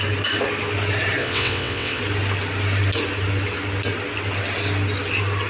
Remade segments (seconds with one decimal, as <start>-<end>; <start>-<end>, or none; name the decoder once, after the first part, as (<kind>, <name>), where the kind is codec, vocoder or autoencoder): 1.2-2.0 (vocoder, WaveNeXt)